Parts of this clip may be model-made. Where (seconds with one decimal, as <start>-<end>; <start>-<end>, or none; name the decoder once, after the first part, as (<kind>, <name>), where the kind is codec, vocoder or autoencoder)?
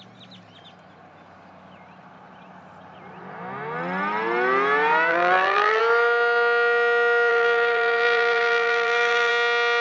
5.1-5.8 (vocoder, BigVGAN v2); 7.3-9.3